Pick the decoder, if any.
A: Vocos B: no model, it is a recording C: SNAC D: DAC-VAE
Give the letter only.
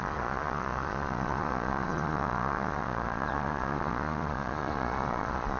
A